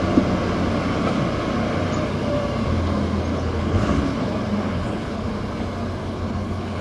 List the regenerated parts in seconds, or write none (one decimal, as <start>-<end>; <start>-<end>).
3.3-4.3; 4.7-5.3; 6.0-6.8